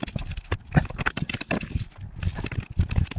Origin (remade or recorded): recorded